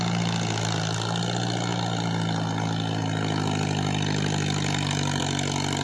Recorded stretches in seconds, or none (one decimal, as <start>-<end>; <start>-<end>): 0.0-5.8